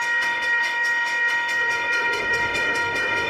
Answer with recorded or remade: remade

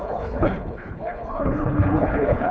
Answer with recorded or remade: remade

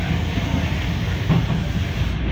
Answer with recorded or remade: recorded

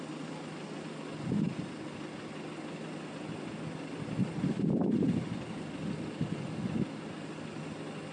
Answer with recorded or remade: recorded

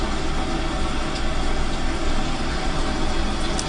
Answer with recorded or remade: recorded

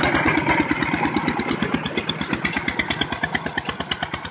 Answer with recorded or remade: recorded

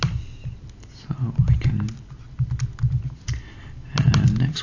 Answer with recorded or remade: recorded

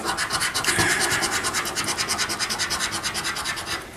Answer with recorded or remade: recorded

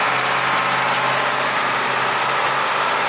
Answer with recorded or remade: recorded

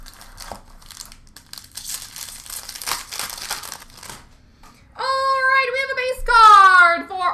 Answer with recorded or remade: recorded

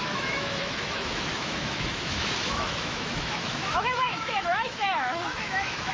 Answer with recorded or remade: remade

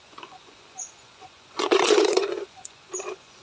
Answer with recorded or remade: remade